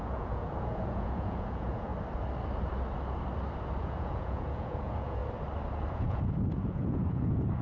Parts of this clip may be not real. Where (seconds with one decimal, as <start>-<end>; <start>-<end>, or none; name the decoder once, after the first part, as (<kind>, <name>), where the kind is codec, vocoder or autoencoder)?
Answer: 0.0-1.9 (vocoder, Vocos); 3.8-5.2; 5.9-7.6